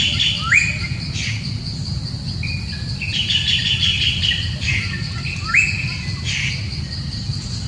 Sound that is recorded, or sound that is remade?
recorded